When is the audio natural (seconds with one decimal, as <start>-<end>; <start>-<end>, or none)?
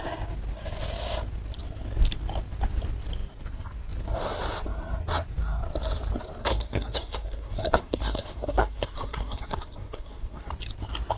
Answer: 0.0-6.4; 10.5-11.2